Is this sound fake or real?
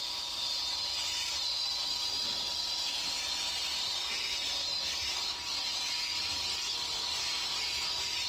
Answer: real